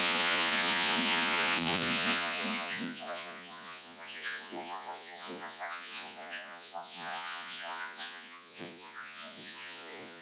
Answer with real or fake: fake